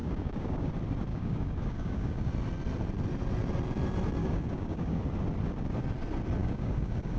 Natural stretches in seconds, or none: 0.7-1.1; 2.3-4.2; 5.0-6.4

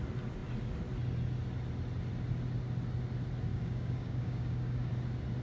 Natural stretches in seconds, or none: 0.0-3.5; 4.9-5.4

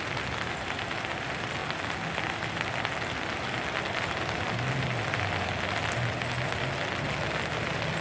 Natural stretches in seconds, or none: 0.0-8.0

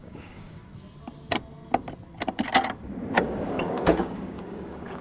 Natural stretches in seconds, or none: 0.6-3.2